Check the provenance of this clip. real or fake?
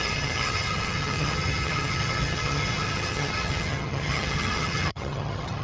fake